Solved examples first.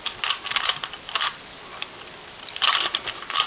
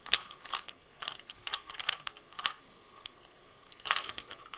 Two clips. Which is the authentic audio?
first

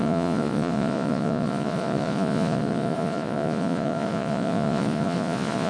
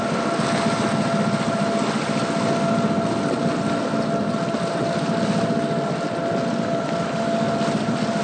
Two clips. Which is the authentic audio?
second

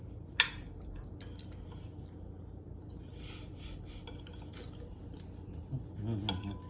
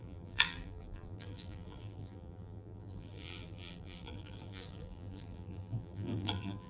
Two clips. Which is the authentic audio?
first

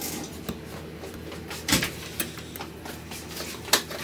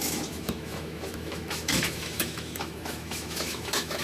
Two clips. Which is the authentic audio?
first